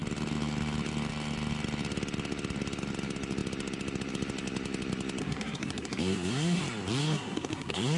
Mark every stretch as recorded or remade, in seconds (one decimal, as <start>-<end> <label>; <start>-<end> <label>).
0.0-5.2 recorded; 5.2-6.6 remade; 6.6-7.0 recorded; 7.0-8.0 remade